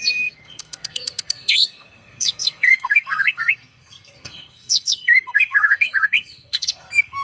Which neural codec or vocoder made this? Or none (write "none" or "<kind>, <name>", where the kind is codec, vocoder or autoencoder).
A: codec, SNAC